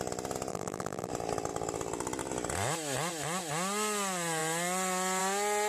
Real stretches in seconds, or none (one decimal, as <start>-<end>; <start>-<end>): 0.0-0.5; 1.1-5.7

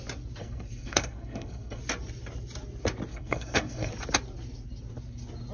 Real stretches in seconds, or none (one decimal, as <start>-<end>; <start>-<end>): 0.0-0.4; 1.8-3.1; 3.9-5.5

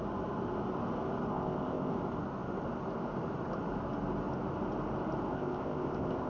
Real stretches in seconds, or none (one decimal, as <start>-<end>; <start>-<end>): 0.0-1.3; 1.9-5.3

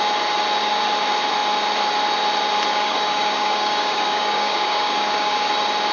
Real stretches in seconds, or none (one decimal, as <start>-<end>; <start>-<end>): 0.0-2.7; 5.5-5.9